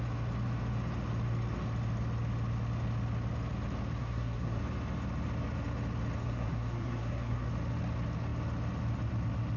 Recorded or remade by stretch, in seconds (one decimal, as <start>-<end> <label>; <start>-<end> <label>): 0.0-4.0 recorded; 4.0-4.6 remade; 4.6-6.2 recorded; 6.2-7.5 remade; 7.5-9.6 recorded